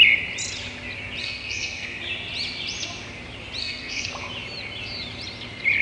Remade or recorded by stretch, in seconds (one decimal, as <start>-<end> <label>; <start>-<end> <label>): 0.0-1.2 recorded; 1.2-2.0 remade; 2.0-3.6 recorded; 3.6-4.1 remade; 4.1-5.8 recorded